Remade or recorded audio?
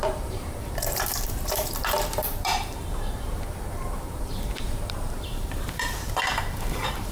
remade